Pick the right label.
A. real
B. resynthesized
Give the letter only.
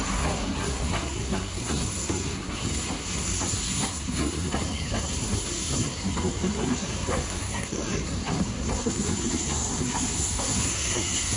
B